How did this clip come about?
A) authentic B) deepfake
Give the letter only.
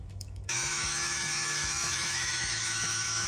B